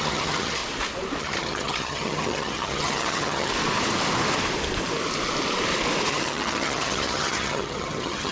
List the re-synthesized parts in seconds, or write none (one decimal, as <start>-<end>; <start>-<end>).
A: 0.0-0.6; 1.2-3.5; 6.1-8.3